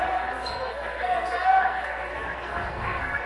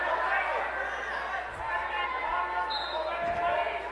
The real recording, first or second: second